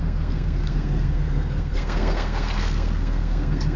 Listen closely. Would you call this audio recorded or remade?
remade